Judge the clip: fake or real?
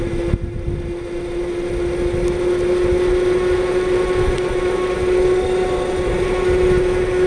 real